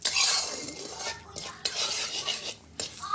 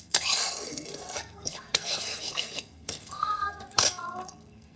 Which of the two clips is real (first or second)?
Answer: first